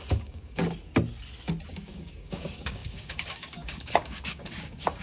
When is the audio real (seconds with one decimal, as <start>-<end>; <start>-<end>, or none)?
0.6-1.7